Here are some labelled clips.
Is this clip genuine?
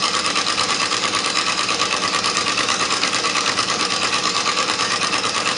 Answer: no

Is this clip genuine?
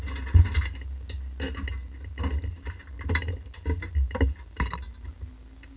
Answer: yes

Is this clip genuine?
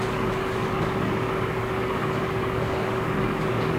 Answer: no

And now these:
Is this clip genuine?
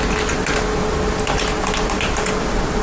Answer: yes